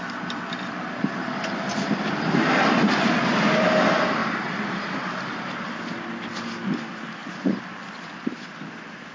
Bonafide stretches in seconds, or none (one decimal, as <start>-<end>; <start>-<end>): 0.0-9.1